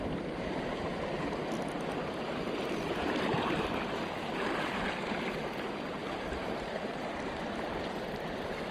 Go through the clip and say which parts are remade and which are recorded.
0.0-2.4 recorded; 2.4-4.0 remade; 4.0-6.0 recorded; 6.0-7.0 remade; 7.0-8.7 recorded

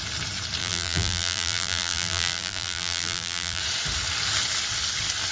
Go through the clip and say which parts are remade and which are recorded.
0.0-0.6 recorded; 0.6-3.6 remade; 3.6-5.3 recorded

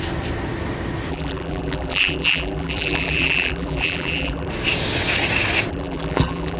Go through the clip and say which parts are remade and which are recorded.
0.0-1.1 recorded; 1.1-4.5 remade; 4.5-5.7 recorded; 5.7-6.6 remade